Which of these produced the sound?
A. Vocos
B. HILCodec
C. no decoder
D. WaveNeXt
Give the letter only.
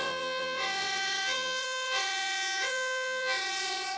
D